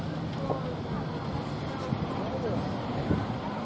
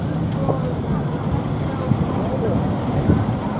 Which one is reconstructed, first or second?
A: second